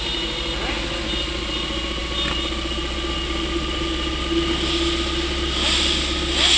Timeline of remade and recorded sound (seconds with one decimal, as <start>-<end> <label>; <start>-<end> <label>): 0.0-6.6 recorded